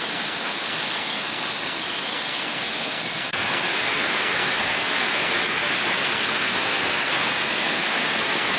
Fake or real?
fake